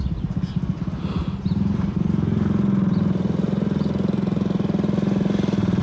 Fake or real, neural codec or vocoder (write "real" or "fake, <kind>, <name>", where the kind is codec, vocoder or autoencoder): real